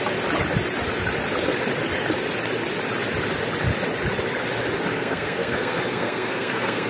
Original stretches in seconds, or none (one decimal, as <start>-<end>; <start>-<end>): 0.0-4.9